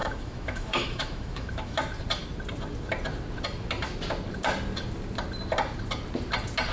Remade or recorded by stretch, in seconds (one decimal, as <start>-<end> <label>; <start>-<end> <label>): 0.0-1.8 remade; 1.8-6.7 recorded